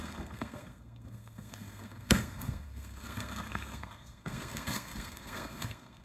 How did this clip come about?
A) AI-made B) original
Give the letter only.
A